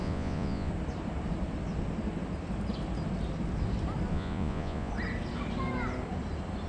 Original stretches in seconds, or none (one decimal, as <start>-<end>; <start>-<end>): 0.7-4.1; 4.9-6.7